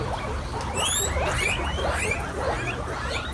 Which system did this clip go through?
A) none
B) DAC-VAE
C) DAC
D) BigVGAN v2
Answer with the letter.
A